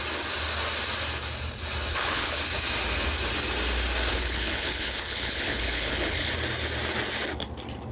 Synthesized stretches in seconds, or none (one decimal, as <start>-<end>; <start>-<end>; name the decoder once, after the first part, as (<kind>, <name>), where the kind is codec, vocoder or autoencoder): 1.9-2.4 (codec, HILCodec); 4.1-6.3